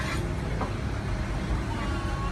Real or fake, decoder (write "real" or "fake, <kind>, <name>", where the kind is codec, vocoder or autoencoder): real